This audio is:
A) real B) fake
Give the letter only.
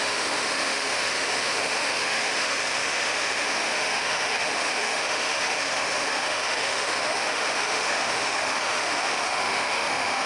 B